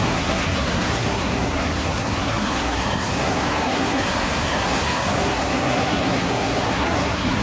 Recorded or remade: remade